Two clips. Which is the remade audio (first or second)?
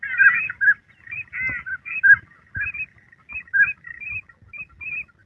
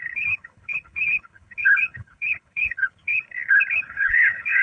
second